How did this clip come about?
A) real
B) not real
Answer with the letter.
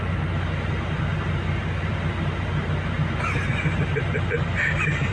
A